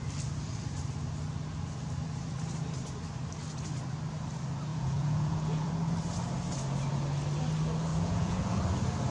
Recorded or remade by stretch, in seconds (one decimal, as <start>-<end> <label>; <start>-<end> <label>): 0.0-4.7 recorded; 4.7-5.7 remade; 5.7-7.9 recorded; 7.9-8.6 remade; 8.6-9.1 recorded